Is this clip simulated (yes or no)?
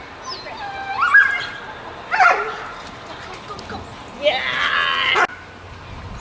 no